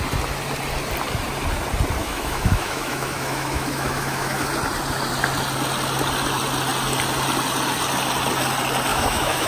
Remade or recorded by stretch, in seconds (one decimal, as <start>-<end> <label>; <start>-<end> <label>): 0.0-2.0 recorded; 2.0-4.5 remade; 4.5-8.9 recorded; 8.9-9.5 remade

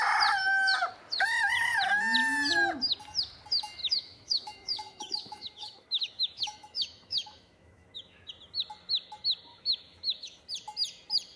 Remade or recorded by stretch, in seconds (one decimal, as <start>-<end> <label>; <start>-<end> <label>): 0.0-3.8 recorded; 3.8-8.3 remade; 8.3-9.5 recorded; 9.5-10.4 remade; 10.4-11.4 recorded

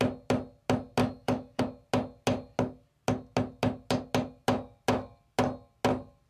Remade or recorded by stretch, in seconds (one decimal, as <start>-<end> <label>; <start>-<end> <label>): 0.0-1.0 recorded; 1.0-1.6 remade; 1.6-6.3 recorded

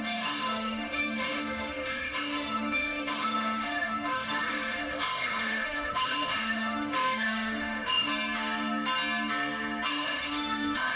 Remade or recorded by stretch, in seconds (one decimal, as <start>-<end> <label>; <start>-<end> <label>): 0.0-8.1 remade; 8.1-9.9 recorded; 9.9-11.0 remade

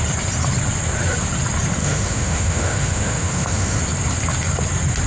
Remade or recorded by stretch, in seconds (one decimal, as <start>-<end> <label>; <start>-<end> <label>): 0.0-1.8 recorded; 1.8-3.8 remade; 3.8-5.1 recorded

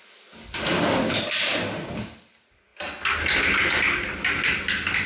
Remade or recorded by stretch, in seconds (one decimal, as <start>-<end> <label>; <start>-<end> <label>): 0.0-5.1 recorded

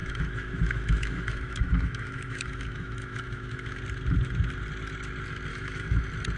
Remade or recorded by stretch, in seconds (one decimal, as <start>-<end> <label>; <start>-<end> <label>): 0.0-3.8 remade; 3.8-5.5 recorded; 5.5-6.0 remade; 6.0-6.4 recorded

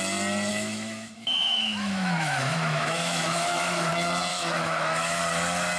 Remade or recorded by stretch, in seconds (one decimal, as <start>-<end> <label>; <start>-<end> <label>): 0.0-0.5 recorded; 0.5-3.9 remade; 3.9-4.3 recorded; 4.3-5.2 remade; 5.2-5.8 recorded